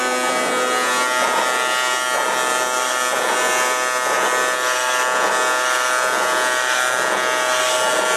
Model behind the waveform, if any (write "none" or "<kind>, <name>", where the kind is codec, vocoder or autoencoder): none